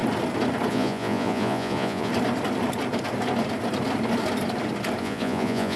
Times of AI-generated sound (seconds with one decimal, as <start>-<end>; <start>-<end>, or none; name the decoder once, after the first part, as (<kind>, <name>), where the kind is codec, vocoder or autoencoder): 0.7-2.1 (vocoder, Vocos); 5.0-5.8